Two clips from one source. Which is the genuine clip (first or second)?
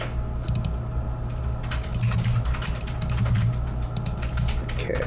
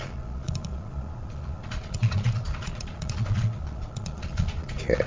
first